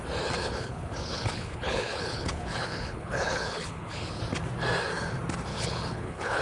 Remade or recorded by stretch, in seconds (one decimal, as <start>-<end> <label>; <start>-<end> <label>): 0.0-0.4 recorded; 0.4-4.2 remade; 4.2-5.5 recorded; 5.5-6.4 remade